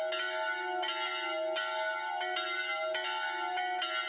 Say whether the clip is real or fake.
real